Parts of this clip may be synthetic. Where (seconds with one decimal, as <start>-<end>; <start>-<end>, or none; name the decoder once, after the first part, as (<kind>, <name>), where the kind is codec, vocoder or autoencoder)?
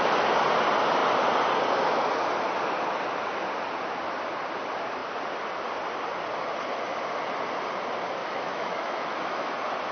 8.2-9.5 (autoencoder, DAC-VAE)